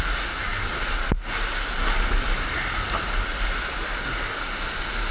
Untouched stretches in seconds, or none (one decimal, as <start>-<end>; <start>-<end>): 0.0-5.1